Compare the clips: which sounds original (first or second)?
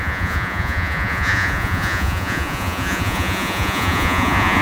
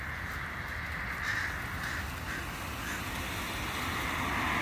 second